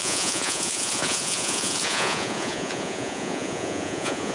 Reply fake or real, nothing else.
fake